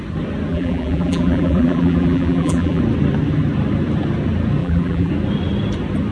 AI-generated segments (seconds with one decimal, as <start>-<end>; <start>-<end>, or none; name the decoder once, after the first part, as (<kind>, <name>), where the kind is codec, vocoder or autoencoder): 0.5-2.8 (vocoder, BigVGAN v2); 4.6-5.1